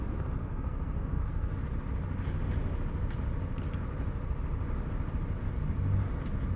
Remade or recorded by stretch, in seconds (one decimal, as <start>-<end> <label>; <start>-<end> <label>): 0.0-0.4 recorded; 0.4-1.6 remade; 1.6-6.6 recorded